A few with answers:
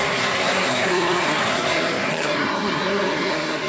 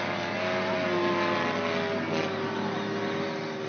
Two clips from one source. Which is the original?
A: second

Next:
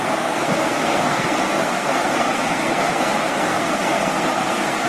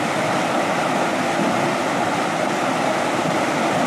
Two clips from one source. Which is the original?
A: second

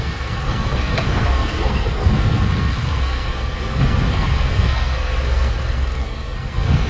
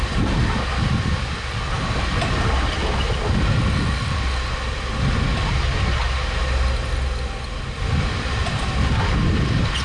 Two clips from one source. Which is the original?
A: second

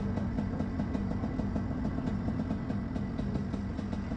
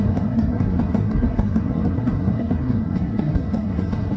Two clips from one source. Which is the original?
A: first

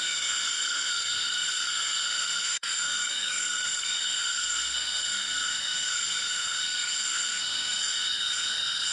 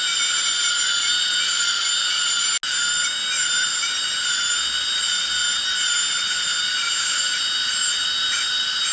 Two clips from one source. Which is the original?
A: second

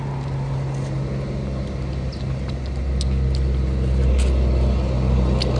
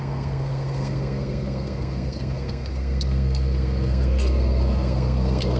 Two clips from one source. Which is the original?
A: first